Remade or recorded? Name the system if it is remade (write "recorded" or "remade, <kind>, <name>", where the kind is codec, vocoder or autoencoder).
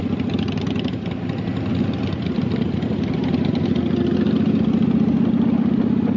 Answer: recorded